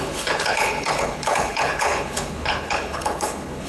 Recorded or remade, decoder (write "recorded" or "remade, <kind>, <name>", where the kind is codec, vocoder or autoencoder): remade, codec, HILCodec